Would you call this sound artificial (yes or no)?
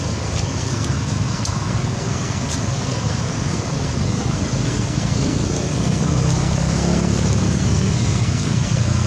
yes